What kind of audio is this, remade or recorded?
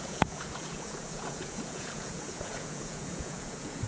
remade